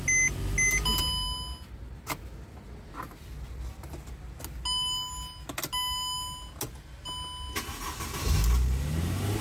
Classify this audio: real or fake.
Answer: real